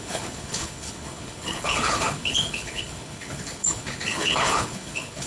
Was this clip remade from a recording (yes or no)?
yes